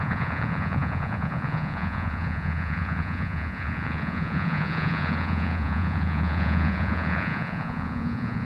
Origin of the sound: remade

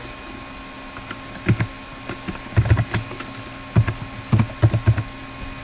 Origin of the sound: recorded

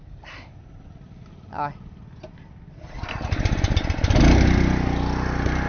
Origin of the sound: recorded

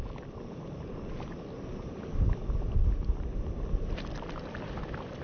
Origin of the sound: recorded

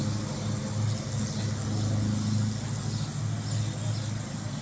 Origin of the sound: recorded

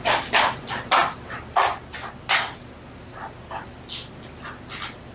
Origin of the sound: recorded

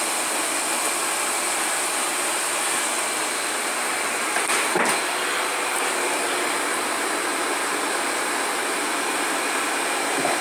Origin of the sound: recorded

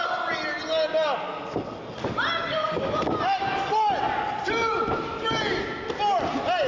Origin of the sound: recorded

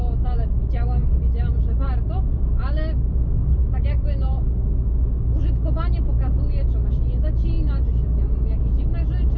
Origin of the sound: recorded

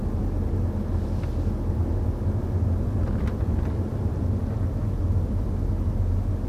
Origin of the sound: recorded